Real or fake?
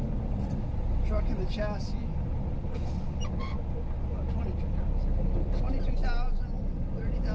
real